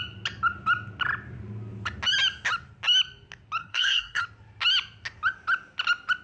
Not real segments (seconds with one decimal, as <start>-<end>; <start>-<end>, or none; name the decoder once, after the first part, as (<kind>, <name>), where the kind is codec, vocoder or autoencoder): 3.6-4.2 (codec, SNAC)